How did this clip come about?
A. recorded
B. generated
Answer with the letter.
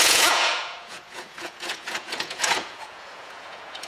B